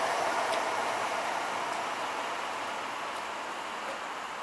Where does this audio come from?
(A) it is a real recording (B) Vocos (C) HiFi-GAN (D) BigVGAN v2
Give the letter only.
A